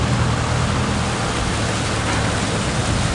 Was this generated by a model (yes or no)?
no